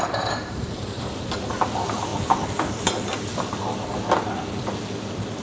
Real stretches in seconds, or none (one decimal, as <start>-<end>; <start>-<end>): 2.1-5.4